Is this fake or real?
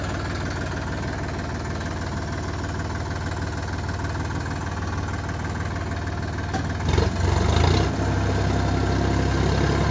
real